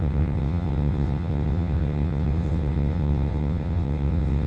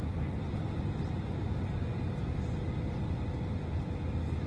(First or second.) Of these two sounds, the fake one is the first